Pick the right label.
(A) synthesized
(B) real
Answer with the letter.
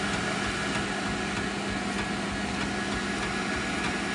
B